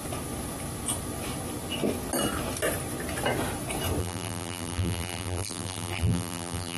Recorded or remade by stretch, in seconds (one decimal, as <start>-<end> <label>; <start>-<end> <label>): 0.0-4.0 recorded; 4.0-6.8 remade